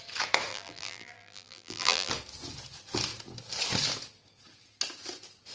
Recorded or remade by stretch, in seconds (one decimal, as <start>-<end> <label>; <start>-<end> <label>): 0.0-0.5 recorded; 0.5-2.1 remade; 2.1-5.5 recorded